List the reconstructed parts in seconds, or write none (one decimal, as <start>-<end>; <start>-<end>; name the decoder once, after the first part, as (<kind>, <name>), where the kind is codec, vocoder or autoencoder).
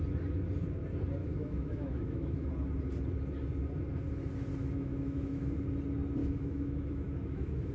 1.2-2.5 (autoencoder, DAC-VAE); 4.6-5.5; 6.2-7.7